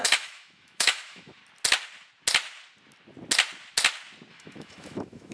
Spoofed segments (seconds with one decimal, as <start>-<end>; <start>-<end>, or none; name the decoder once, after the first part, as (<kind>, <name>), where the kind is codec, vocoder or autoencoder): 0.0-1.4 (autoencoder, DAC-VAE); 4.3-5.3